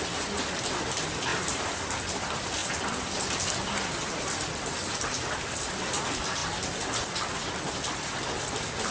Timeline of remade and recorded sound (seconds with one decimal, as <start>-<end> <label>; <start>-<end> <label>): 0.0-1.3 recorded; 1.3-1.8 remade; 1.8-8.9 recorded